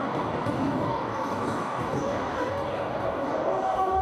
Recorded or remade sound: remade